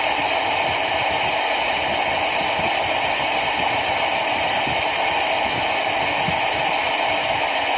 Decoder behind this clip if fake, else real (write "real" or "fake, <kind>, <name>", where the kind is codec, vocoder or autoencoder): real